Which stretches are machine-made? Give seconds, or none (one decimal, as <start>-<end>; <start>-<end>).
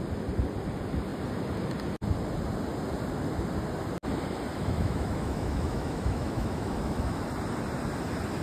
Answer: 4.5-7.2